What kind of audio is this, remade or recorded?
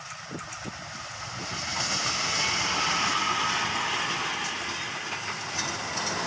recorded